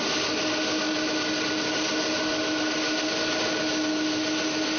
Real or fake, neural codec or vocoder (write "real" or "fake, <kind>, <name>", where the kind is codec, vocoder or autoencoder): real